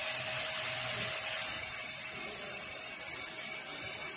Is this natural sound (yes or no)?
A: yes